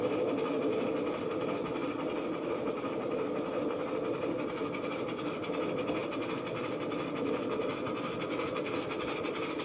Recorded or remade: recorded